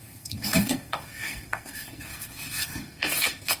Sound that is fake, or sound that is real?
fake